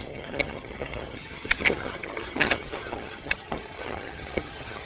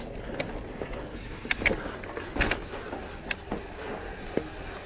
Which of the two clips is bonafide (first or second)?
second